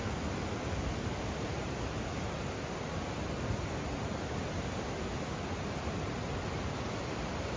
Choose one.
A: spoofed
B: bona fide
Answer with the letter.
B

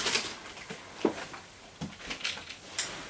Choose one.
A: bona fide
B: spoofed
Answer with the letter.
A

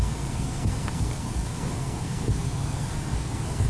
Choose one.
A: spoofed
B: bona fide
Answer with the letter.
A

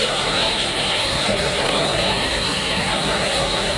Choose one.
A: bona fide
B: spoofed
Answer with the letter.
B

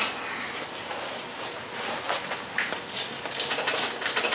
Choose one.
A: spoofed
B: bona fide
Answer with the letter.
B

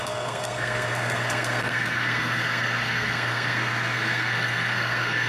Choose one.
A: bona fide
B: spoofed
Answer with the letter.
B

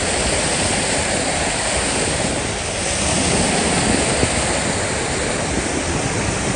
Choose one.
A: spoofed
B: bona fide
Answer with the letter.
B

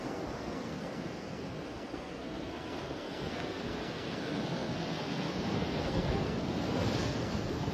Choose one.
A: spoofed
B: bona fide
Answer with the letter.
A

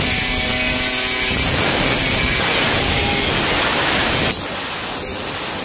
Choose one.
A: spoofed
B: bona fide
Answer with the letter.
B